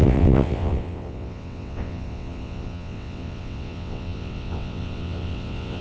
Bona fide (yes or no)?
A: no